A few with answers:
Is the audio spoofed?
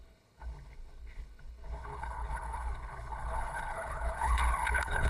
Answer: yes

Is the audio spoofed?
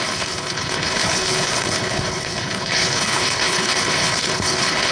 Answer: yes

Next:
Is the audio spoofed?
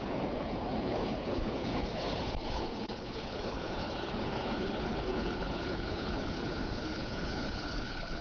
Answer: yes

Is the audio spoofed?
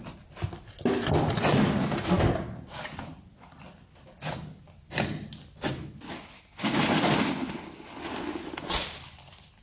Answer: no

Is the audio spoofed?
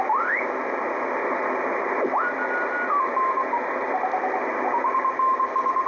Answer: no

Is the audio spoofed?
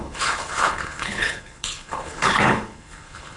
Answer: yes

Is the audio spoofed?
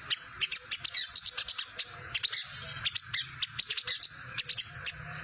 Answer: no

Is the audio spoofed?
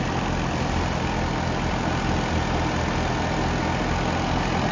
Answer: no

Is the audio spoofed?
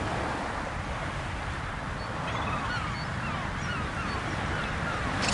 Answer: no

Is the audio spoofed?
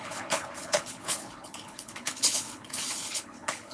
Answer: yes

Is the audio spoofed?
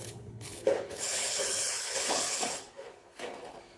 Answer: yes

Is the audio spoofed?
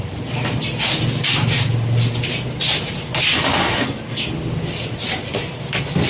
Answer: no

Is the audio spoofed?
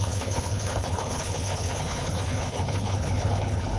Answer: yes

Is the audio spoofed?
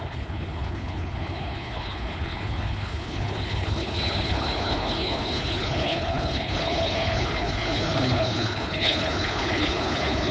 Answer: yes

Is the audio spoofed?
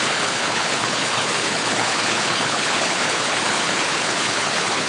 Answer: yes